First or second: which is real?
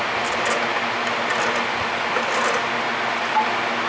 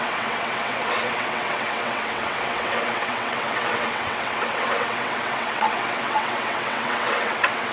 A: first